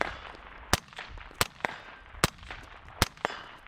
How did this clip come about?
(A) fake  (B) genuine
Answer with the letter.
B